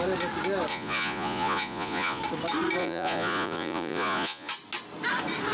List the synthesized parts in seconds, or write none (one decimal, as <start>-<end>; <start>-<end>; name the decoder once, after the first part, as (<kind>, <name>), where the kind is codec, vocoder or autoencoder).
0.7-2.2 (vocoder, Vocos); 2.8-4.5